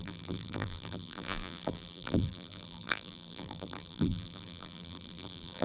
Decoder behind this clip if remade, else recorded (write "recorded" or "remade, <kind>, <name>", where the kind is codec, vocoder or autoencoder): remade, vocoder, BigVGAN v2